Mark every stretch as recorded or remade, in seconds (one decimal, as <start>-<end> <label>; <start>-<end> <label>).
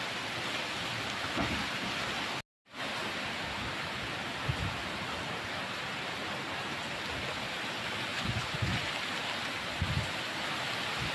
0.0-8.1 recorded; 8.1-8.9 remade; 8.9-11.1 recorded